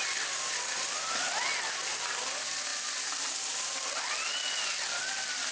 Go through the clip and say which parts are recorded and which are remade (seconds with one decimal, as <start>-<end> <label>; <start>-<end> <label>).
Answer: 0.0-5.5 recorded